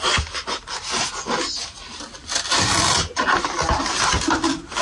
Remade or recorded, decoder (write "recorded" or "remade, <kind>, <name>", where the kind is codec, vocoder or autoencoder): recorded